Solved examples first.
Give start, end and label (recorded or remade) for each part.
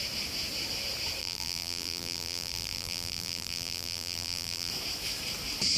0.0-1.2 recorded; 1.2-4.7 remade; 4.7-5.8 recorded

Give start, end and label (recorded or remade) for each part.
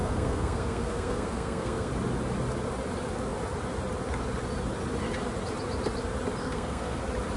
0.0-1.9 remade; 1.9-6.4 recorded; 6.4-7.0 remade; 7.0-7.4 recorded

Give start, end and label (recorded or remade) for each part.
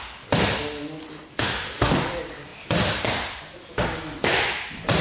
0.0-1.3 recorded; 1.3-1.9 remade; 1.9-5.0 recorded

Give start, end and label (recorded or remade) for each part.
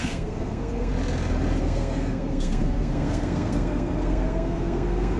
0.0-0.9 remade; 0.9-1.6 recorded; 1.6-5.2 remade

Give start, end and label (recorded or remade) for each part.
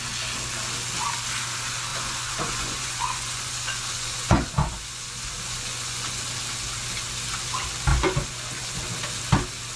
0.0-1.9 recorded; 1.9-6.2 remade; 6.2-7.9 recorded; 7.9-8.8 remade; 8.8-9.8 recorded